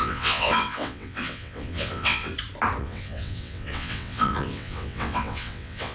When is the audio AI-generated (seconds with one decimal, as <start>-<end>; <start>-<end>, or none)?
0.0-2.3; 2.8-5.9